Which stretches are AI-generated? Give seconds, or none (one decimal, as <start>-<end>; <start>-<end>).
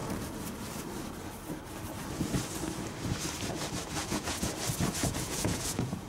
4.0-4.5; 5.0-6.1